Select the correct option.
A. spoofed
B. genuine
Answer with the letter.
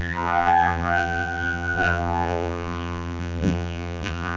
A